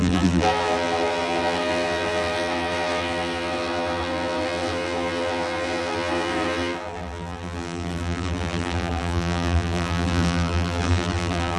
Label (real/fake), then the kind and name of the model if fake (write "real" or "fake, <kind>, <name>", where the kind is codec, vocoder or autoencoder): fake, vocoder, BigVGAN v2